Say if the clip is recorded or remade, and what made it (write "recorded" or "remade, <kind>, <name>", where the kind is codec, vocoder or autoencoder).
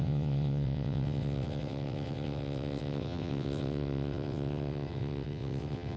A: remade, vocoder, WaveNeXt